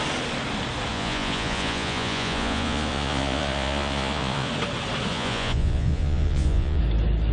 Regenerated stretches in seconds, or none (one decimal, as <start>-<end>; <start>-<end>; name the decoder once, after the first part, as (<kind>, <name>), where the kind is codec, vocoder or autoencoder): 0.9-4.5 (vocoder, Vocos); 5.1-6.8